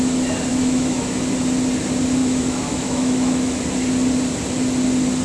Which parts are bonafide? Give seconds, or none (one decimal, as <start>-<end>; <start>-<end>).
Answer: 0.0-0.5; 1.2-2.2; 3.6-5.2